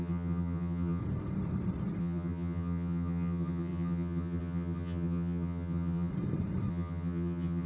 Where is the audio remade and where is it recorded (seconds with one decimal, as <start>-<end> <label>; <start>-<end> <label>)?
0.0-1.0 remade; 1.0-2.0 recorded; 2.0-6.1 remade; 6.1-6.7 recorded; 6.7-7.7 remade